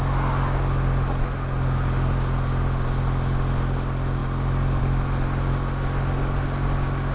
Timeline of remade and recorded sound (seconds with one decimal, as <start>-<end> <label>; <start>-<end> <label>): 0.0-7.1 recorded